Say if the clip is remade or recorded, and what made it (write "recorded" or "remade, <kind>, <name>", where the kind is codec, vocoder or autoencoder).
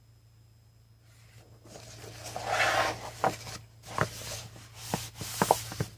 recorded